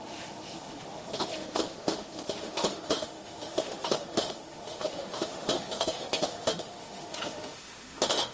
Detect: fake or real fake